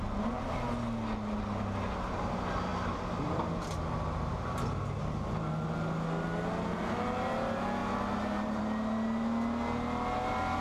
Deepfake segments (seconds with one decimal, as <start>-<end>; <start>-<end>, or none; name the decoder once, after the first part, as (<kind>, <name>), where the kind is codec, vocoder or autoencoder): 7.8-8.6 (vocoder, BigVGAN v2)